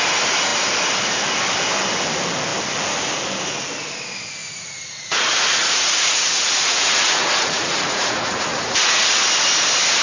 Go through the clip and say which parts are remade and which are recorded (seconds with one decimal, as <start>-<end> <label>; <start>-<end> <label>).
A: 0.0-4.4 recorded; 4.4-9.2 remade; 9.2-10.0 recorded